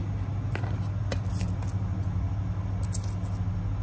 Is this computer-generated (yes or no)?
no